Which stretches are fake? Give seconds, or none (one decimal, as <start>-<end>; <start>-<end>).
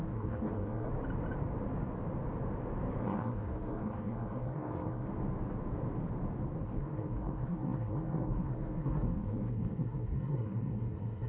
0.0-0.9; 3.0-5.1; 6.6-11.3